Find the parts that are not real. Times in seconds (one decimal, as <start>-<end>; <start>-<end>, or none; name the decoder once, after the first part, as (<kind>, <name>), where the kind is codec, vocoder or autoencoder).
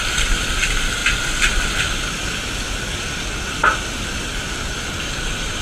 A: 0.0-1.0 (vocoder, BigVGAN v2); 1.8-5.6